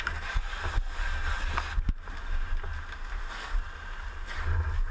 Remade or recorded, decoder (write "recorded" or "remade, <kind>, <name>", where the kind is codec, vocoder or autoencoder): recorded